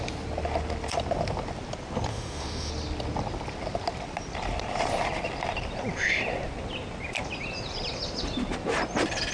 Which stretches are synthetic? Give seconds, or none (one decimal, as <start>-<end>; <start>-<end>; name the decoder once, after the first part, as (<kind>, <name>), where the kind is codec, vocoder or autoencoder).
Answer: 2.1-2.7 (autoencoder, DAC-VAE)